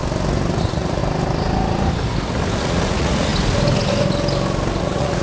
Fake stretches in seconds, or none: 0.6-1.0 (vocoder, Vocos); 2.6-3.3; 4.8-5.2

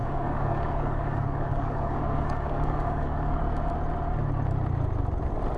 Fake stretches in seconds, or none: 0.0-3.4 (codec, DAC)